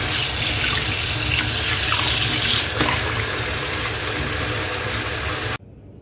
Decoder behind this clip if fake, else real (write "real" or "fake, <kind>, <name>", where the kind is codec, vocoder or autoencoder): real